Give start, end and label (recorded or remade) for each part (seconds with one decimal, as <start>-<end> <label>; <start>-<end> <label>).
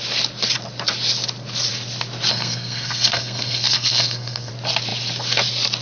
0.0-2.3 recorded; 2.3-4.5 remade; 4.5-5.8 recorded